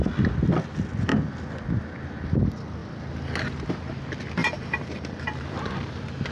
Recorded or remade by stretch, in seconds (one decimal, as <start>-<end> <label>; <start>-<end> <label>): 0.0-4.4 recorded; 4.4-5.6 remade; 5.6-6.3 recorded